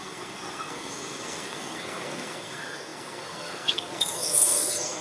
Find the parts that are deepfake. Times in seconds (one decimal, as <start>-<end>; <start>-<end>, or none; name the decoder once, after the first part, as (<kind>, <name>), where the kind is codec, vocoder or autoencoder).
0.0-5.0 (codec, SNAC)